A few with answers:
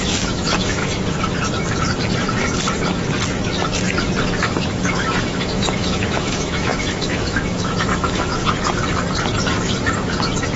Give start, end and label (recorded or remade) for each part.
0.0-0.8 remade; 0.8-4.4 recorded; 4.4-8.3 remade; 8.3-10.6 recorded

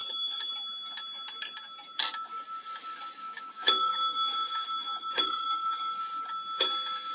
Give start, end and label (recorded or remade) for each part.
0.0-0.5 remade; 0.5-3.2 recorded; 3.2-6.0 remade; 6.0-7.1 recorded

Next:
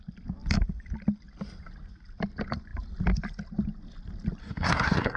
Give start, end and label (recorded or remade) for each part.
0.0-4.4 recorded; 4.4-5.2 remade